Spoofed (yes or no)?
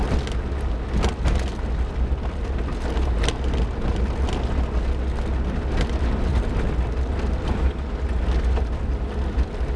no